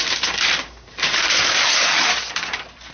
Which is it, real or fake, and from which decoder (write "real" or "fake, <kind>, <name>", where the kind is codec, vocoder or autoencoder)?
fake, vocoder, BigVGAN v2